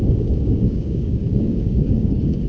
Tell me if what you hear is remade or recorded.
remade